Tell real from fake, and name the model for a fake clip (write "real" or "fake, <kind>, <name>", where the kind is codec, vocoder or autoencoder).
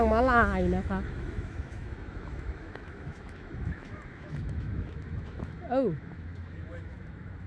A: fake, autoencoder, DAC-VAE